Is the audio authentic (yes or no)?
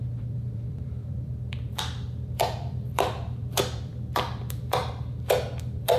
no